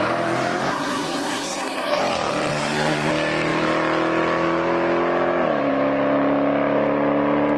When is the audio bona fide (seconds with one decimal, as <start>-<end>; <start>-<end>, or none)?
0.0-0.7; 2.0-2.5; 3.1-7.6